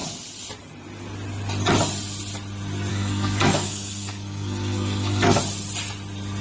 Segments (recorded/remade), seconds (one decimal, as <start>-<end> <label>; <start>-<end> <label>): 0.0-2.9 recorded; 2.9-5.4 remade; 5.4-6.4 recorded